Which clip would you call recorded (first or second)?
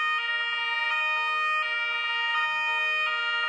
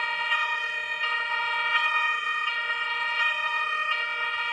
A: first